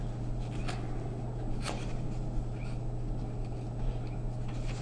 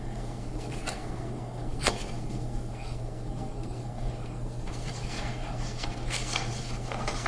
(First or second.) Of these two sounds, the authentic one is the first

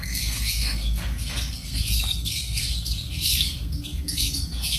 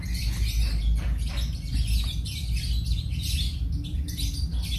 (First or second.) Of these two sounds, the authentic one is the second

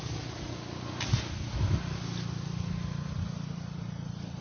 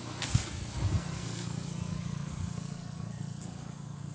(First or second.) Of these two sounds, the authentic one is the first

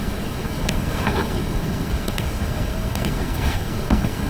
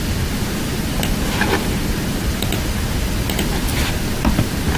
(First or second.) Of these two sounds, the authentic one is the second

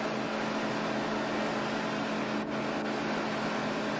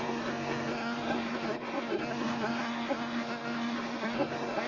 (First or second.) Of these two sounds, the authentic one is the first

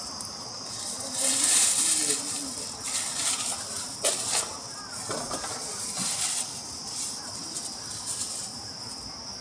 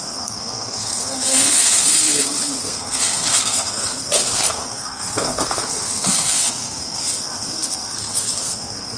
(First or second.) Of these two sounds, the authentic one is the first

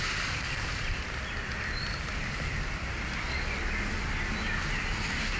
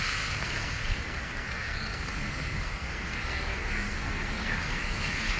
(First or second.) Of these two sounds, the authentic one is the first